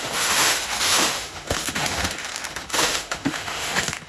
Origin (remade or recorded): remade